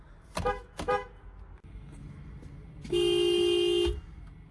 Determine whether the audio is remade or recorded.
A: recorded